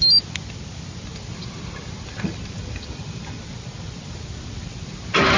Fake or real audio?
real